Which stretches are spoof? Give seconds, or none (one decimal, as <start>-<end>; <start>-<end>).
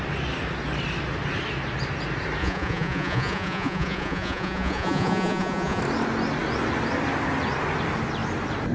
2.4-5.8